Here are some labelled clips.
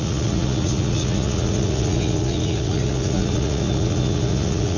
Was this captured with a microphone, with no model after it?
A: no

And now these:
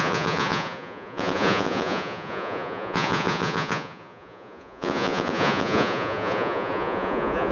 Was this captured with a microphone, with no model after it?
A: no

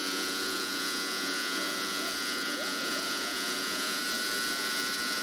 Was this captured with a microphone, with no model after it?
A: no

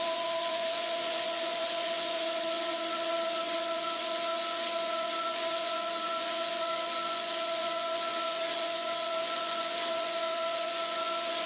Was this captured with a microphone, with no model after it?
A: no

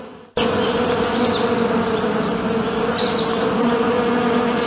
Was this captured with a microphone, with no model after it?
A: yes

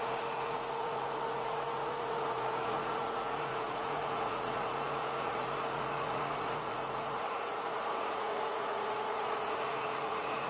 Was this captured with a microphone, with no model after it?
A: no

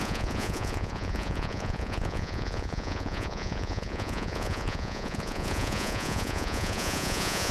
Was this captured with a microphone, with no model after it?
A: no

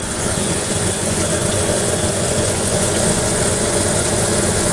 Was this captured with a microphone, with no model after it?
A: no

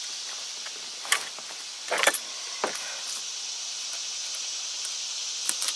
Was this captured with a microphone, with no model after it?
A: yes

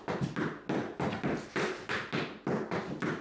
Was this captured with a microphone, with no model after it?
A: yes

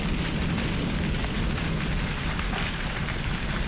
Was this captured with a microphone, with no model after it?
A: yes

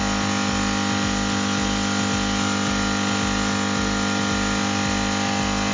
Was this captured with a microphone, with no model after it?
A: yes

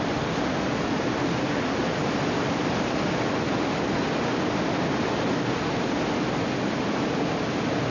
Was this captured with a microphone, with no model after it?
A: yes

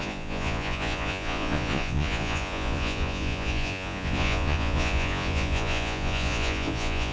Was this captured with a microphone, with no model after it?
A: no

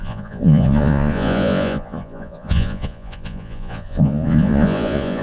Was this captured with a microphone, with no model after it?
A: no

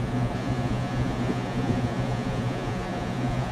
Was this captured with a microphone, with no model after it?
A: no